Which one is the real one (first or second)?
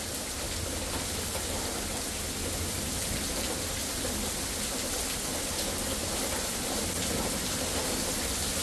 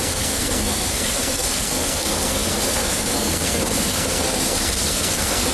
first